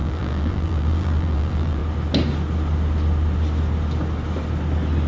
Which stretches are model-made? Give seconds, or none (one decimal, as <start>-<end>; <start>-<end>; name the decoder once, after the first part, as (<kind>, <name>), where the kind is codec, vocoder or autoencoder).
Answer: 0.0-1.8 (vocoder, BigVGAN v2)